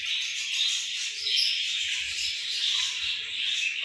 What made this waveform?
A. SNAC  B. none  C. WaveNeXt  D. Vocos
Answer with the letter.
B